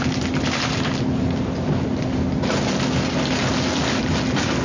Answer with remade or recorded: recorded